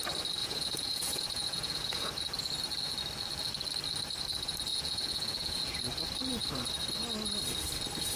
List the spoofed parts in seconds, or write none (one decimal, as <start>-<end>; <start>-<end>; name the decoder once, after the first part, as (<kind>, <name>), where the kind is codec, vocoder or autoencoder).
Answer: 0.4-2.1 (vocoder, Vocos); 4.7-5.8